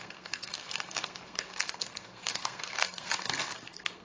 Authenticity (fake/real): fake